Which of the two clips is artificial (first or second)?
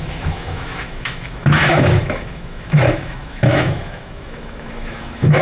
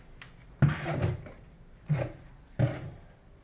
first